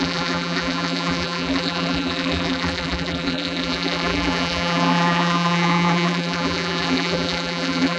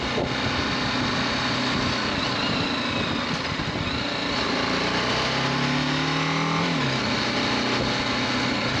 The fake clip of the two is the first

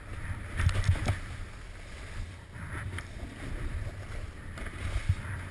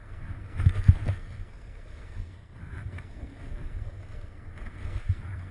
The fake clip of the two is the second